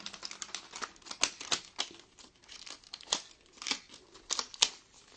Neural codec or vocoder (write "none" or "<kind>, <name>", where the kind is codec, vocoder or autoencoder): none